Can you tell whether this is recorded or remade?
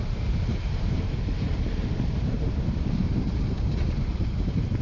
remade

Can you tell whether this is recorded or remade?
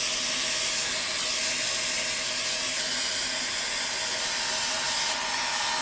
recorded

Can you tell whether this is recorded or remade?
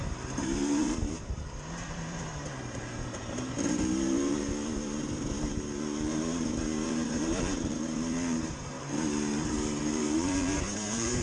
remade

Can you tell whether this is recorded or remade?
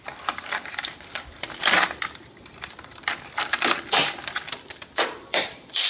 remade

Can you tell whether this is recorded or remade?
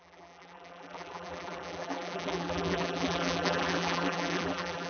remade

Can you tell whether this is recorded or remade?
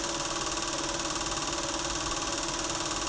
recorded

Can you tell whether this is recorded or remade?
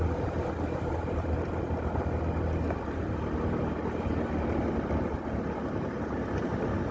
recorded